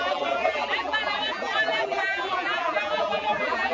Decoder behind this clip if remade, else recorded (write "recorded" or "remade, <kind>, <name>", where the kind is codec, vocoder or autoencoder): remade, vocoder, BigVGAN v2